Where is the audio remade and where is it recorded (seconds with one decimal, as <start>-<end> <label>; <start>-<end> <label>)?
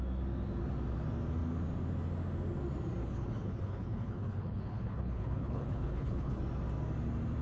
0.0-3.0 recorded; 3.0-6.4 remade; 6.4-7.4 recorded